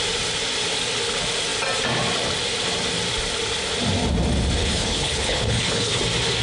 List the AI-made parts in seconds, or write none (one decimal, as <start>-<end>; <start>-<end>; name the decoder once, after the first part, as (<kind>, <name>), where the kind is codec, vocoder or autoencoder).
4.6-6.0 (codec, HILCodec)